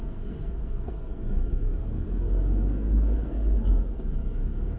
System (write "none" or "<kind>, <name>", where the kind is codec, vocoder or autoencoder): codec, SNAC